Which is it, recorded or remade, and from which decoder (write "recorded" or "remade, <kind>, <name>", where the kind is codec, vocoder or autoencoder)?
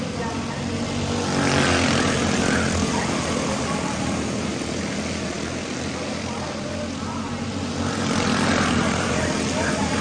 recorded